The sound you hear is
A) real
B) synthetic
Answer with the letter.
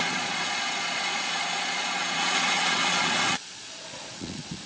B